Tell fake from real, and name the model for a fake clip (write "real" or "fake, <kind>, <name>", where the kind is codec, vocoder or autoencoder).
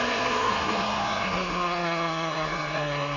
fake, codec, SNAC